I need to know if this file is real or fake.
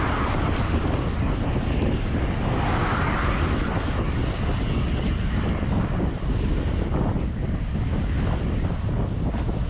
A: real